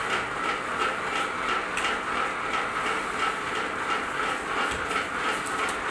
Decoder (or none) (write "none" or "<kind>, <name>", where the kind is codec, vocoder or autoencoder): none